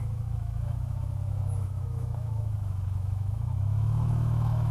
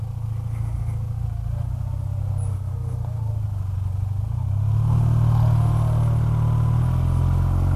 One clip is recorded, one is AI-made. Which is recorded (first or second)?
second